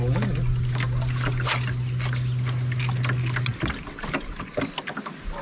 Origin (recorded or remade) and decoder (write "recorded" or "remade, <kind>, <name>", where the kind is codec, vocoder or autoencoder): recorded